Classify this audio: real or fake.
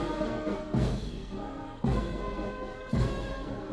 fake